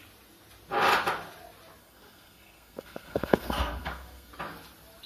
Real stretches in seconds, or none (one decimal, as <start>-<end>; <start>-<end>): 0.0-1.8; 4.3-5.1